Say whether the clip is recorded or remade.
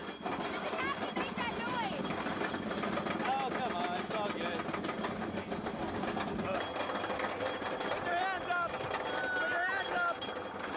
recorded